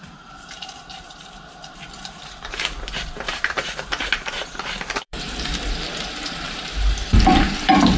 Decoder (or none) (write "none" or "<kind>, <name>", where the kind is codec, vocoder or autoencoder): vocoder, BigVGAN v2